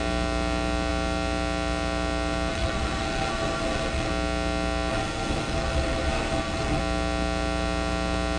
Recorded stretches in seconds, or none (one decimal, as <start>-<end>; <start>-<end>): 0.0-2.5; 4.1-4.9; 6.8-8.4